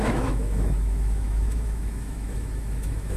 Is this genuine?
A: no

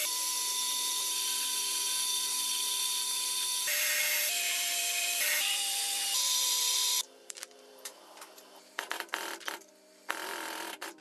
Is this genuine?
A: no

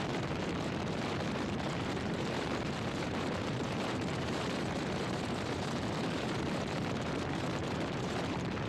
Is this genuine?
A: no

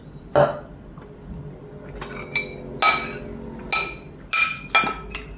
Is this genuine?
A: yes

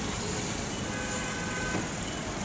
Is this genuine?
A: yes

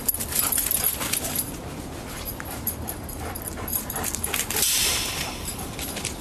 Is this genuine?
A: no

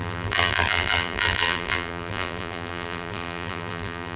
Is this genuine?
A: no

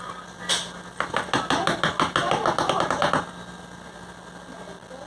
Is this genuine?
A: yes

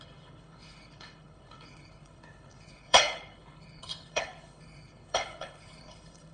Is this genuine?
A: no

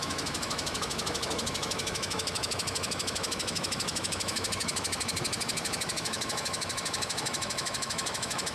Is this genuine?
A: no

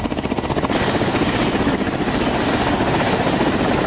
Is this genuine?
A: yes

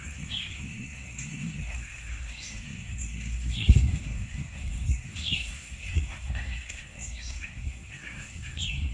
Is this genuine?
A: no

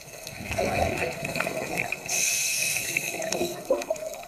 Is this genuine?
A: no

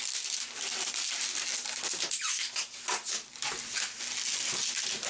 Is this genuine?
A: yes